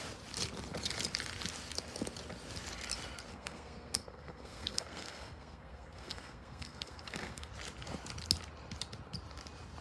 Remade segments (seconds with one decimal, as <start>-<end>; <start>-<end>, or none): 3.3-7.5